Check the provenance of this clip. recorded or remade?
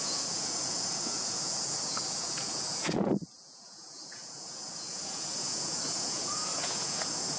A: remade